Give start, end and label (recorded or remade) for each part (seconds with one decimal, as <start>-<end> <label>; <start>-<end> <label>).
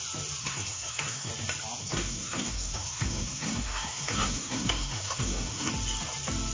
0.0-0.4 recorded; 0.4-1.3 remade; 1.3-1.8 recorded; 1.8-5.7 remade; 5.7-6.5 recorded